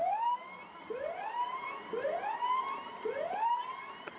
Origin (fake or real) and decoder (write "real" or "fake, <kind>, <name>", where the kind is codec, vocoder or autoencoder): real